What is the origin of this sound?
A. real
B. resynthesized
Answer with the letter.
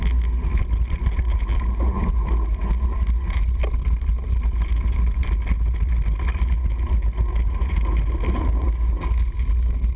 A